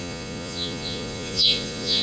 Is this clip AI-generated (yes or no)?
yes